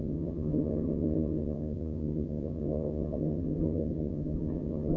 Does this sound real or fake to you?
fake